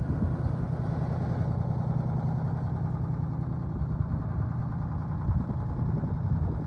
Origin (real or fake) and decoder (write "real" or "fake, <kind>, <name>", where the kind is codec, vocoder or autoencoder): real